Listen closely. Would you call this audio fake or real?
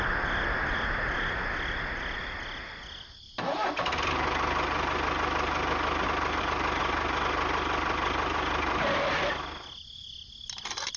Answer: real